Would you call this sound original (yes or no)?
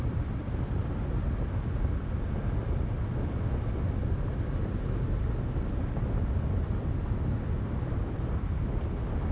yes